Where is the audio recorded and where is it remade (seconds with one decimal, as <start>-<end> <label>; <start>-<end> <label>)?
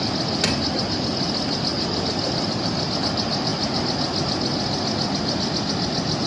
0.0-1.7 recorded; 1.7-3.0 remade; 3.0-6.3 recorded